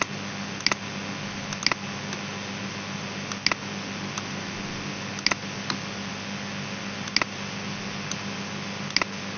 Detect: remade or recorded recorded